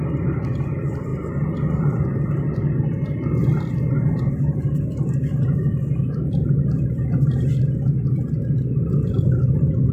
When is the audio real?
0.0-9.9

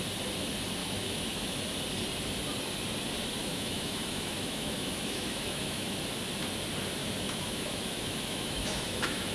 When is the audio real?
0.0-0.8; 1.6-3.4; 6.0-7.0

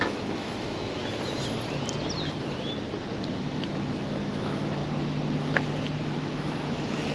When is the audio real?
1.0-3.3; 4.8-6.0

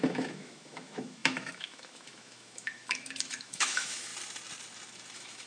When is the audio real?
4.1-5.1

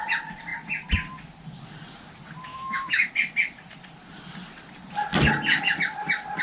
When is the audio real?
0.0-2.5; 3.1-6.4